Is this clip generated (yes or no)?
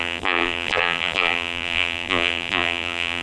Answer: yes